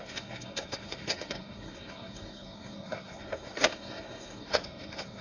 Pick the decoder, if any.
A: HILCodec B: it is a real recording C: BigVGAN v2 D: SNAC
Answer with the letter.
D